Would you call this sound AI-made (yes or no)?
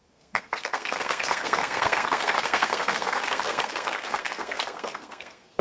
yes